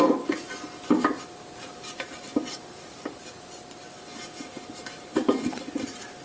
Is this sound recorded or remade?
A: recorded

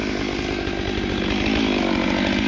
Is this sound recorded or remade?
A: recorded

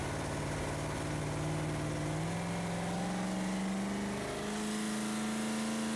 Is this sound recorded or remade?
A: recorded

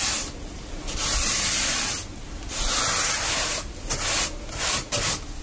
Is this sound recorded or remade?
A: recorded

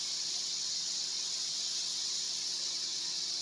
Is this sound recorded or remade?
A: remade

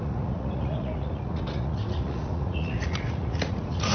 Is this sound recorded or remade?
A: remade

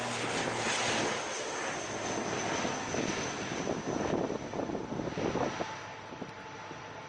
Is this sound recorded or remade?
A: recorded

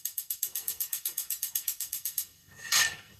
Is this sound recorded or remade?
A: remade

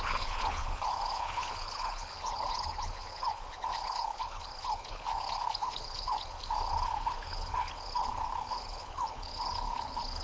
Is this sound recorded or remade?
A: remade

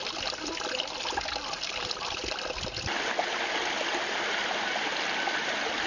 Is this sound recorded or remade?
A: recorded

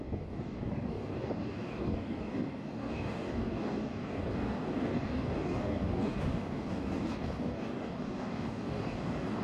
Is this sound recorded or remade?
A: remade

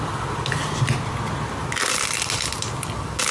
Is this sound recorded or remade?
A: recorded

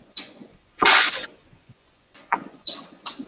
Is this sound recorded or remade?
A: remade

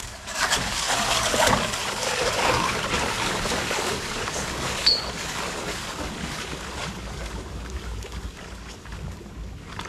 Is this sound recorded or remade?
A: remade